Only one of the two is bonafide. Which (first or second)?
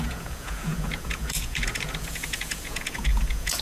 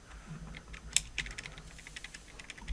second